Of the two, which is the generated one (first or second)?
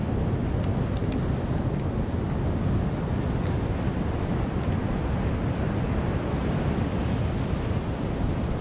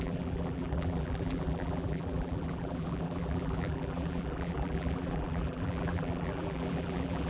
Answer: second